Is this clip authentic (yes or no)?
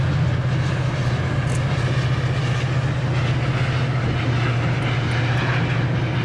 yes